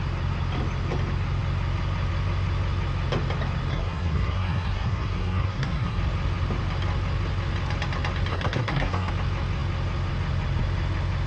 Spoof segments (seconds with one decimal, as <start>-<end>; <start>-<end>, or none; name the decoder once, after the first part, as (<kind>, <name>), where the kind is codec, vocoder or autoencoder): 3.7-6.0 (codec, SNAC); 8.3-9.1